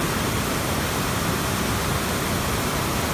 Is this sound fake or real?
real